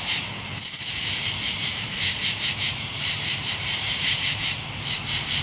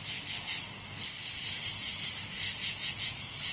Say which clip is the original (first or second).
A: second